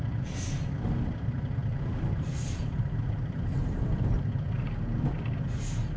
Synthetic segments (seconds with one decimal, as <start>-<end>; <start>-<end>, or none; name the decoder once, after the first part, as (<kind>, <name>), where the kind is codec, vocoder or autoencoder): 1.6-5.2 (vocoder, BigVGAN v2)